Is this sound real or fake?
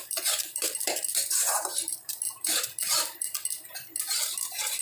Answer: fake